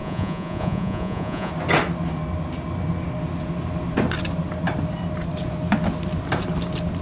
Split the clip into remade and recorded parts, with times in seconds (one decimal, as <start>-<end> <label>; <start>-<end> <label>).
0.0-1.5 remade; 1.5-7.0 recorded